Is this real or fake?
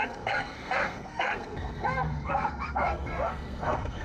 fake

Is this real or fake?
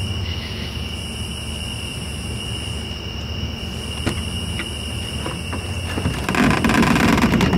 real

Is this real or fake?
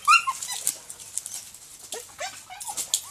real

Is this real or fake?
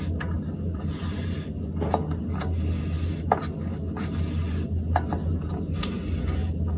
real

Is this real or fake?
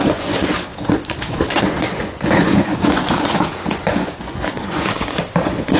fake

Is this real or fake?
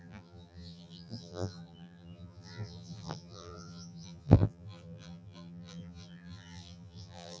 fake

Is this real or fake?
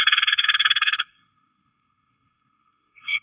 fake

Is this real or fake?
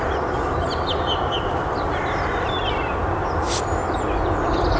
real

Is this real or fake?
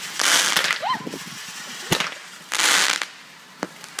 real